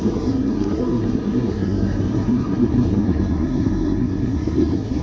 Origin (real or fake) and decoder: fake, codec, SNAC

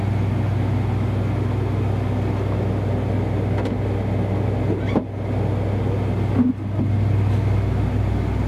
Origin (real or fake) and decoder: real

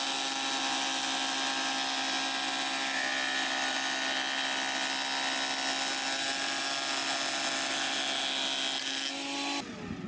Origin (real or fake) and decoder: real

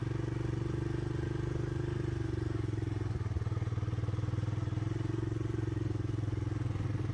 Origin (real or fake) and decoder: real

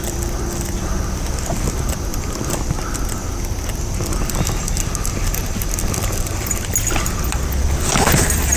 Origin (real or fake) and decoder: real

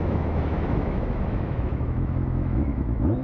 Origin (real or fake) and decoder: fake, autoencoder, DAC-VAE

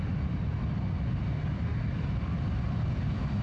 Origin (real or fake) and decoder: real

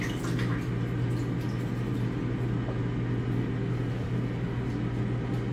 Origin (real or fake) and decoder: real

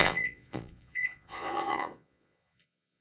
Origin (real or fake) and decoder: fake, vocoder, Vocos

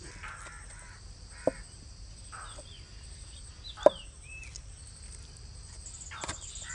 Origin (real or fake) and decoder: real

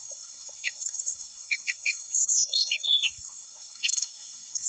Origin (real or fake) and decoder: fake, codec, SNAC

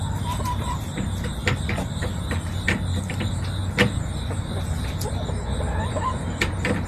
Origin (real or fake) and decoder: real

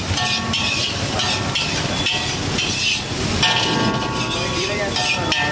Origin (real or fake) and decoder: real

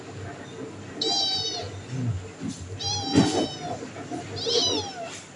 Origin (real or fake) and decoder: real